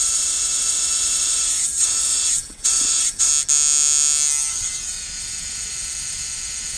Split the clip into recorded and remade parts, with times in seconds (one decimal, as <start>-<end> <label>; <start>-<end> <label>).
0.0-3.3 remade; 3.3-4.5 recorded; 4.5-6.8 remade